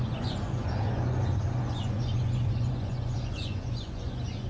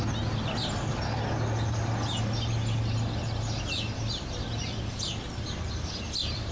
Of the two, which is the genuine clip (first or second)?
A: second